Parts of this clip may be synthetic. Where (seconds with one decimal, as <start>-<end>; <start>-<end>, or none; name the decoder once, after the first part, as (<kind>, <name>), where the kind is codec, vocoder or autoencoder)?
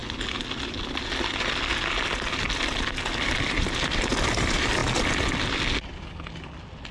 none